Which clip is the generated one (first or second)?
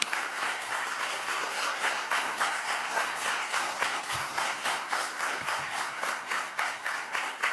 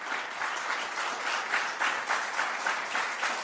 first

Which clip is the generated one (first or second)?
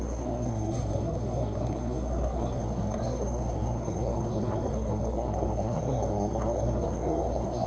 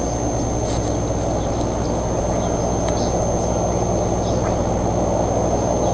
first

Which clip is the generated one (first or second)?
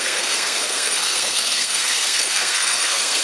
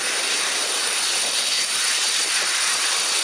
first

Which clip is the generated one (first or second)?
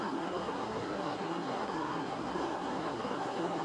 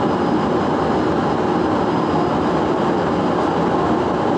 first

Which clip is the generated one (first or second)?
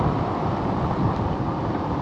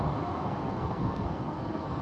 second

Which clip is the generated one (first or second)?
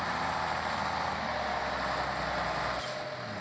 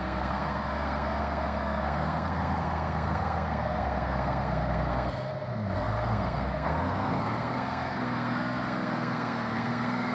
second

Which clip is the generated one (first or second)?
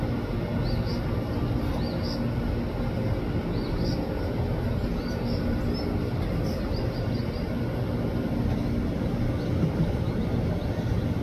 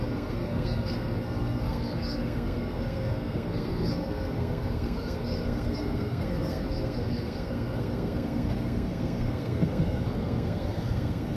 second